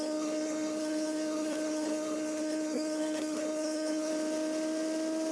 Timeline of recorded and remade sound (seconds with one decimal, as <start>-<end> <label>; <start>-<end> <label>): 0.0-4.1 remade; 4.1-5.3 recorded